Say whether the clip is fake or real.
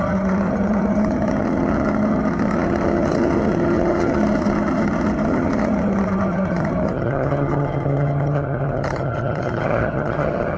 fake